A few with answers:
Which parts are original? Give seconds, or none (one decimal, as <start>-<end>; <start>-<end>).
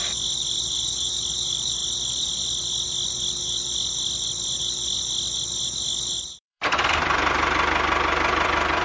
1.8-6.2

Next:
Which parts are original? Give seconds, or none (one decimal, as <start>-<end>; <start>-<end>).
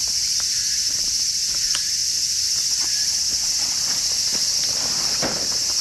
0.0-5.8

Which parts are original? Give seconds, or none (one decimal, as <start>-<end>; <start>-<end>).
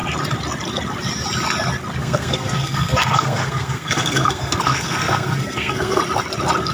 0.0-2.0; 6.0-6.7